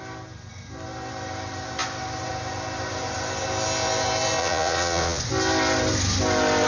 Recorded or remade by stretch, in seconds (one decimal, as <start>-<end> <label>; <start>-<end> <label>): 0.0-4.4 recorded; 4.4-5.2 remade; 5.2-6.7 recorded